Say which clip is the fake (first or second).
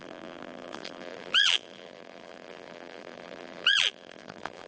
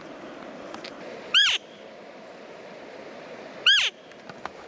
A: first